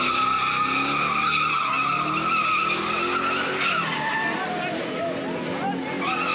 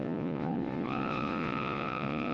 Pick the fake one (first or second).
second